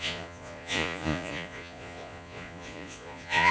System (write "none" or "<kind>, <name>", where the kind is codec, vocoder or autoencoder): vocoder, Vocos